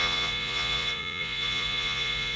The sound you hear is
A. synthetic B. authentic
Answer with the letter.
A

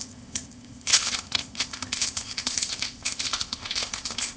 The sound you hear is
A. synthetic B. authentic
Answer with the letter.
A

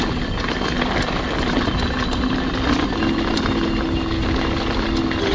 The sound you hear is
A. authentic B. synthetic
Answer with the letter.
A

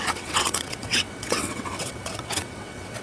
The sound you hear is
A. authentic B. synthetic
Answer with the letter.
B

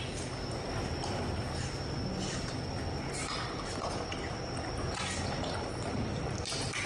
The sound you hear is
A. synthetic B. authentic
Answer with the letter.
B